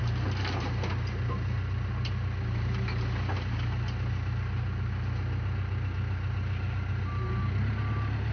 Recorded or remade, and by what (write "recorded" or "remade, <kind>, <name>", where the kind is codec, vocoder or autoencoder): recorded